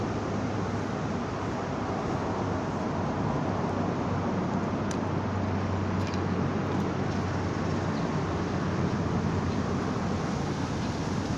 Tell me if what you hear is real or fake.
real